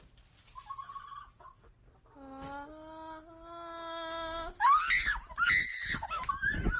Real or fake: real